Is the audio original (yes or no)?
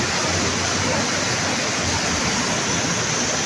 yes